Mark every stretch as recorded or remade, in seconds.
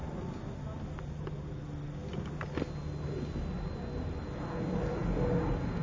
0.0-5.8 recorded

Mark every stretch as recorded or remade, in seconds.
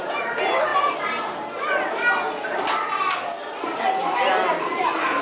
0.0-5.2 recorded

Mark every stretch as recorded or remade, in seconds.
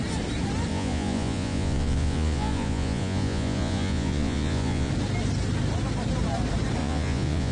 0.0-0.7 recorded; 0.7-4.9 remade; 4.9-6.8 recorded; 6.8-7.5 remade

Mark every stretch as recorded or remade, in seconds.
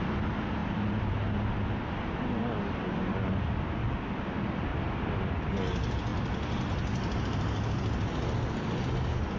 0.0-0.6 recorded; 0.6-1.1 remade; 1.1-4.7 recorded; 4.7-5.3 remade; 5.3-6.1 recorded; 6.1-7.2 remade; 7.2-9.4 recorded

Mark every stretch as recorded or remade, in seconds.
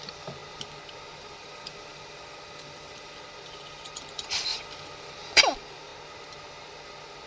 0.0-0.4 remade; 0.4-1.2 recorded; 1.2-5.9 remade; 5.9-7.3 recorded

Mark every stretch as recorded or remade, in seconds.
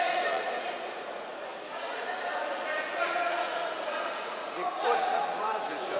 0.0-6.0 remade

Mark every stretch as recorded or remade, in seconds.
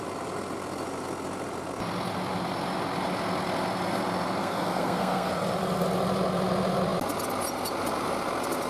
0.0-4.4 recorded; 4.4-5.3 remade; 5.3-8.7 recorded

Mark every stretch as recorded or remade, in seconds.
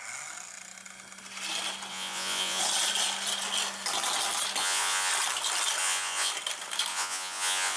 0.0-1.9 recorded; 1.9-2.6 remade; 2.6-4.6 recorded; 4.6-5.1 remade; 5.1-5.8 recorded; 5.8-6.3 remade; 6.3-6.9 recorded; 6.9-7.8 remade